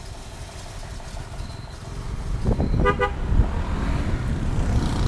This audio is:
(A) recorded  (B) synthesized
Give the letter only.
A